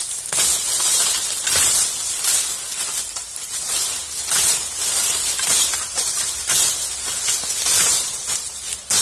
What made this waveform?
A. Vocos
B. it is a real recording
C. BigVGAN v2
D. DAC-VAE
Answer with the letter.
B